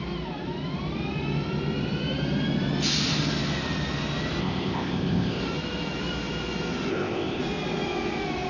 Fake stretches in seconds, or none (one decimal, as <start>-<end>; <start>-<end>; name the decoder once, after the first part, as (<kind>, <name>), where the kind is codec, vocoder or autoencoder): 4.4-5.4 (codec, ZipCodec); 6.9-7.4